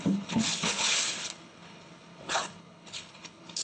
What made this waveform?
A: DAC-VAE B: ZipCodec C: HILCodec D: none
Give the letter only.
C